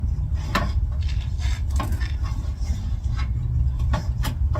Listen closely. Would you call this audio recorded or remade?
recorded